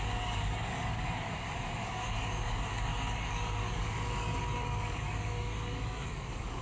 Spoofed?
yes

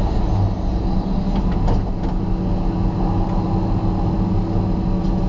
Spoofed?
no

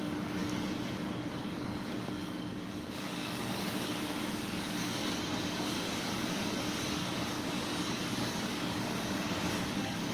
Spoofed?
yes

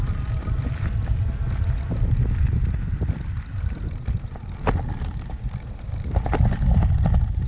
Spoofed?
no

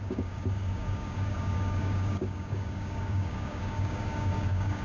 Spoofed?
yes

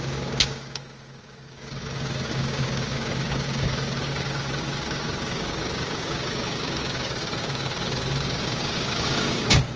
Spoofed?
yes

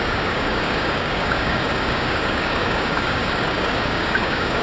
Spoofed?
yes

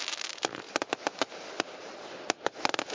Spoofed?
no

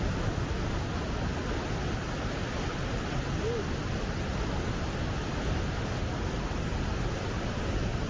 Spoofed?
no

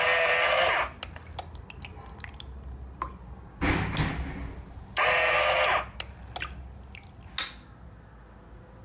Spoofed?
no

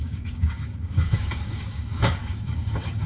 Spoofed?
yes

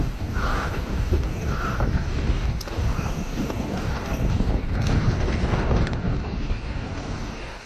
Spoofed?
yes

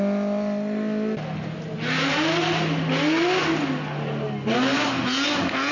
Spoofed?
no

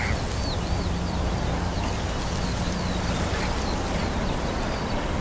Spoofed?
no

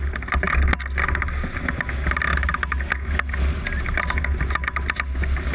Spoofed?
no